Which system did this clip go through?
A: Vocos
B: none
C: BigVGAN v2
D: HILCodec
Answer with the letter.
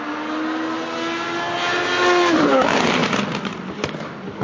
B